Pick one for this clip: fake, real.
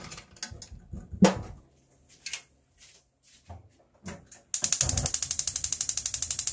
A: real